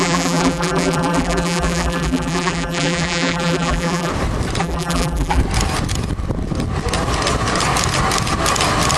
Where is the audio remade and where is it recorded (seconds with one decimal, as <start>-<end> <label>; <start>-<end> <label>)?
0.0-4.1 remade; 4.1-4.6 recorded; 4.6-5.4 remade; 5.4-9.0 recorded